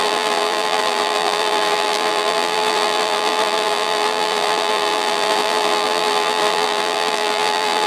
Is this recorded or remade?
remade